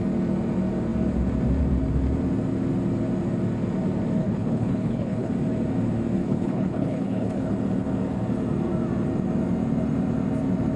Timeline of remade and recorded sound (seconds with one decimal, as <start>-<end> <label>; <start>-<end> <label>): 0.0-4.2 recorded; 4.2-5.3 remade; 5.3-6.2 recorded; 6.2-7.5 remade; 7.5-10.8 recorded